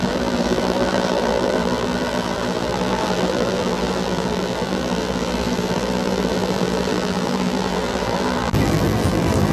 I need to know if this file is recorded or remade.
remade